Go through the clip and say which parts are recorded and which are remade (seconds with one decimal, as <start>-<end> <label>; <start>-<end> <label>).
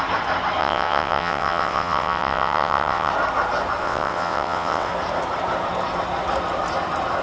0.0-0.6 recorded; 0.6-3.1 remade; 3.1-3.8 recorded; 3.8-4.9 remade; 4.9-7.2 recorded